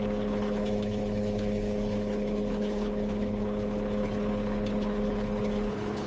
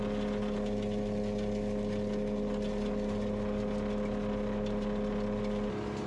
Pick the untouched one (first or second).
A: second